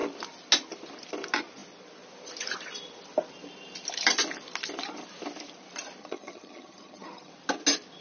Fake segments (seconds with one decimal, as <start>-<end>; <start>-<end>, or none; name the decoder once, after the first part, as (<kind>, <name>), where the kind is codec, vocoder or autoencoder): 6.0-7.3 (vocoder, HiFi-GAN)